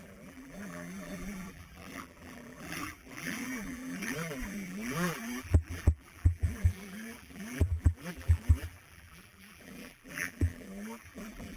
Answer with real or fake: fake